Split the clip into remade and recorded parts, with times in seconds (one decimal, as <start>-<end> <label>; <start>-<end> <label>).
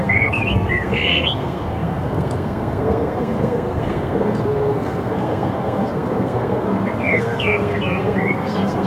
0.0-8.9 remade